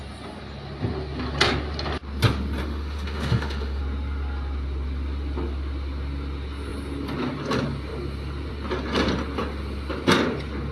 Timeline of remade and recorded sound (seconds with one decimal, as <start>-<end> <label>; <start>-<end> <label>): 0.0-2.6 recorded; 2.6-3.8 remade; 3.8-10.7 recorded